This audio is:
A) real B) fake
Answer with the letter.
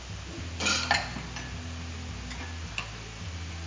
A